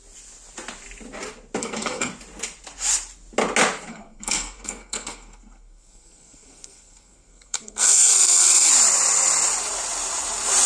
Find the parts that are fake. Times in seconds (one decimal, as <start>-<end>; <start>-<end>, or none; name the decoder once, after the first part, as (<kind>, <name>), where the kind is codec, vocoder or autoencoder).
1.6-2.1 (codec, SNAC); 3.9-8.7